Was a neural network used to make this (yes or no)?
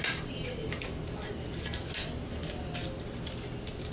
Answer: no